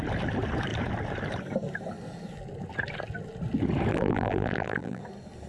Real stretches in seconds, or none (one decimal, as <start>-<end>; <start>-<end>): 0.0-3.9; 5.0-5.5